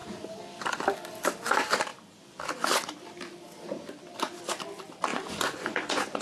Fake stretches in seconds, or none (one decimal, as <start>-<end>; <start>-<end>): 5.1-6.2